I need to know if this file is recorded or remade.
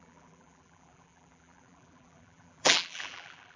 remade